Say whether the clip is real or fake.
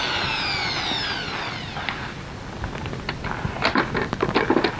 real